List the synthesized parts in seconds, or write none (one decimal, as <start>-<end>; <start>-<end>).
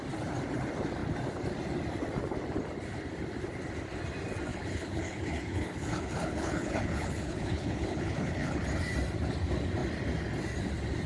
4.5-8.6